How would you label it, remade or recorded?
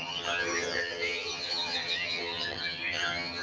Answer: remade